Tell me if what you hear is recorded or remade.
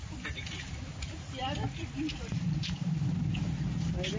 recorded